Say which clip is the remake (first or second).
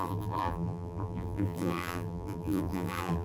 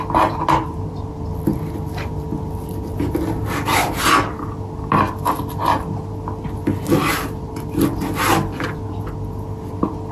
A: first